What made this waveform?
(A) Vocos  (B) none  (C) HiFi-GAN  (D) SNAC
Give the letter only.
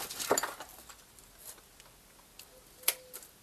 B